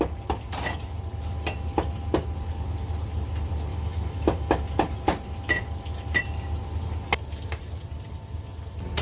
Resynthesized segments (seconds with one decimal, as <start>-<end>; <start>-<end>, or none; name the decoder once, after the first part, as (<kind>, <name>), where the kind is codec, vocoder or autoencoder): 3.7-4.6 (autoencoder, DAC-VAE)